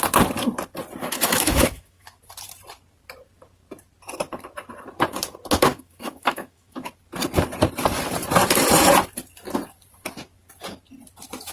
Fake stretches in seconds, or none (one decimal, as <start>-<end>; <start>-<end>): 1.0-2.2; 5.7-6.9